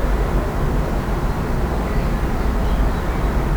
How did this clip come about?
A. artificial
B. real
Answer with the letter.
A